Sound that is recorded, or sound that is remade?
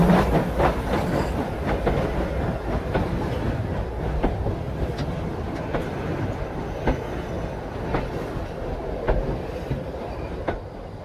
recorded